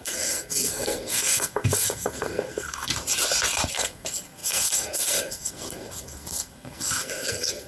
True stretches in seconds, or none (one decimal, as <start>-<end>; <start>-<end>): 2.9-3.7